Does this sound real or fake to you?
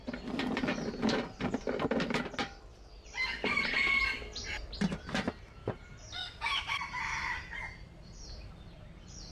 fake